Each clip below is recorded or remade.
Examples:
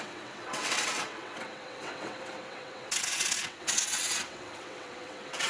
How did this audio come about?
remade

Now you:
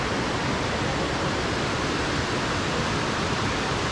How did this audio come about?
recorded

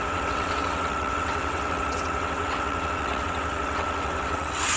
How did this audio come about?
remade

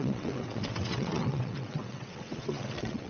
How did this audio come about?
remade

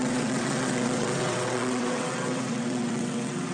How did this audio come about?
remade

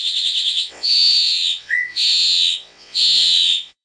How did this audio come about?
remade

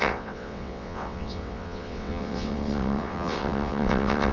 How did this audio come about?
remade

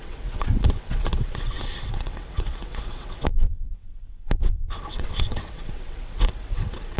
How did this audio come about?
remade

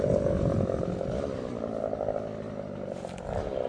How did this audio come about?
recorded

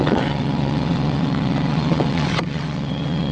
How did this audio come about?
remade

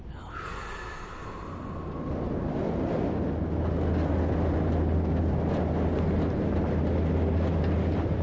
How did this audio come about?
recorded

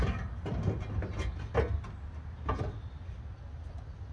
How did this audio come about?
recorded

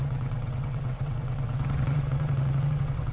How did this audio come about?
remade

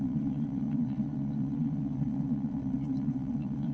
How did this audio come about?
remade